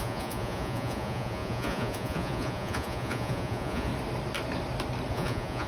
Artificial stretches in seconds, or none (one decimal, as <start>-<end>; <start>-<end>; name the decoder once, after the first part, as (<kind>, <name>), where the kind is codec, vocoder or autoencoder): 0.0-3.9 (vocoder, Vocos); 5.1-5.7

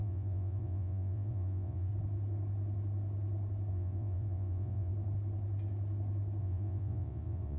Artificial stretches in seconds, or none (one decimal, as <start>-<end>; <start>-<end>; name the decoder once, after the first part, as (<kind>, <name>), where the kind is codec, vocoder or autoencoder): 0.0-1.9 (vocoder, Vocos); 3.7-4.9; 6.4-7.6

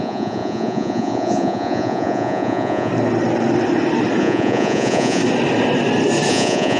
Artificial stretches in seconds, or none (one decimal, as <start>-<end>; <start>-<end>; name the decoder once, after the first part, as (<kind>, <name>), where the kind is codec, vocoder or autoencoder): 0.0-2.9 (vocoder, Vocos); 4.2-5.2; 6.3-6.8

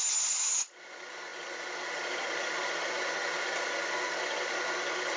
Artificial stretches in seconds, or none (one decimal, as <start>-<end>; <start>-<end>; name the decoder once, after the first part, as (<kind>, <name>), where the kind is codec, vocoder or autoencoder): none

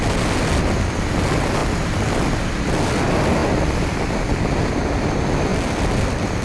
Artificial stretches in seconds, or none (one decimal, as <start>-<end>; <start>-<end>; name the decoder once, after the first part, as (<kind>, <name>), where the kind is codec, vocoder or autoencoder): none

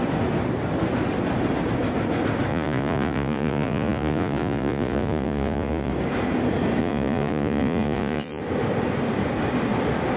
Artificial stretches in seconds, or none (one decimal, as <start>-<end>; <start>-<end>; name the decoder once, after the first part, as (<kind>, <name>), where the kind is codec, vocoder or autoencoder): 2.5-5.9 (vocoder, Vocos); 6.8-8.4

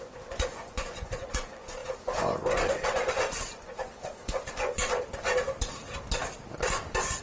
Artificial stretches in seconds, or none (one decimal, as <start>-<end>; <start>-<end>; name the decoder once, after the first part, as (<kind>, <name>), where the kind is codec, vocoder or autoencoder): 0.0-4.8 (vocoder, Vocos)

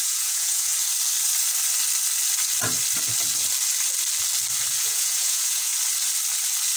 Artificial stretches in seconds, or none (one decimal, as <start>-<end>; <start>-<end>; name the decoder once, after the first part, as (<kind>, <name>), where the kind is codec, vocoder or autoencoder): 0.0-0.7 (vocoder, Vocos); 4.8-5.7